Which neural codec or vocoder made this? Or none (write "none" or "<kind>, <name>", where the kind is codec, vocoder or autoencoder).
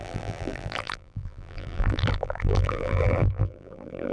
vocoder, BigVGAN v2